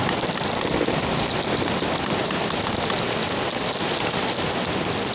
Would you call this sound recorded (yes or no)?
yes